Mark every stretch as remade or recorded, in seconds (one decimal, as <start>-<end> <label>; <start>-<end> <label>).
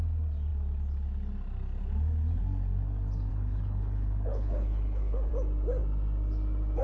0.0-3.3 recorded; 3.3-5.3 remade; 5.3-6.8 recorded